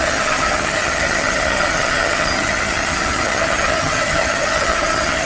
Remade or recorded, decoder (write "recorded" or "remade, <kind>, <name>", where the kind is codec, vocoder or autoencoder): remade, vocoder, HiFi-GAN